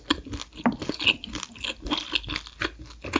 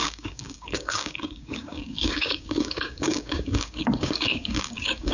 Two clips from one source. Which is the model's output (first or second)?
second